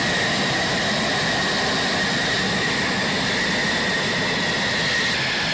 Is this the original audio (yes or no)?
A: yes